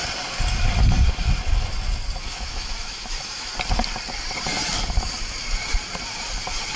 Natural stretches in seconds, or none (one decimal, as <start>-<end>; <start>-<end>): 0.0-2.3; 3.5-6.8